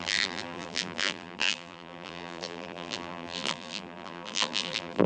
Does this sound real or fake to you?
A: fake